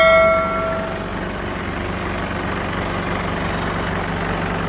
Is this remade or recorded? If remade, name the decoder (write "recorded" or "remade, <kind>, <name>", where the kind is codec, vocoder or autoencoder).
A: recorded